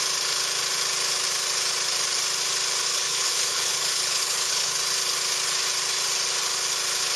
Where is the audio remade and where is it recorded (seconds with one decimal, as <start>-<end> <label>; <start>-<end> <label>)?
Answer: 0.0-2.9 recorded; 2.9-4.8 remade; 4.8-7.2 recorded